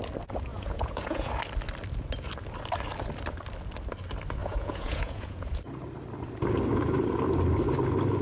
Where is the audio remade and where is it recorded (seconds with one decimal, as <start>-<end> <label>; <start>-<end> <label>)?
0.0-0.5 recorded; 0.5-1.3 remade; 1.3-4.4 recorded; 4.4-5.6 remade; 5.6-8.2 recorded